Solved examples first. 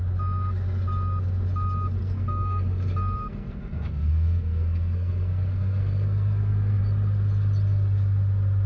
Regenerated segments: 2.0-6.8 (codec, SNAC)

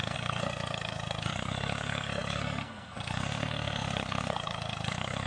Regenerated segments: 0.0-5.3 (codec, SNAC)

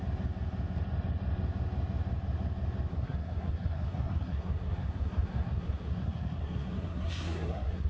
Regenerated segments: 2.9-7.9 (codec, SNAC)